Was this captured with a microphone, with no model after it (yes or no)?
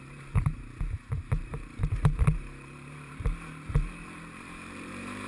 no